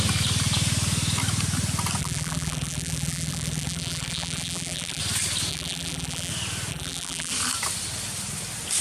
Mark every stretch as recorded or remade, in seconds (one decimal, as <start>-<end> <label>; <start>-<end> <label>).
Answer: 0.0-2.0 recorded; 2.0-5.0 remade; 5.0-5.5 recorded; 5.5-6.3 remade; 6.3-6.7 recorded; 6.7-7.3 remade; 7.3-8.8 recorded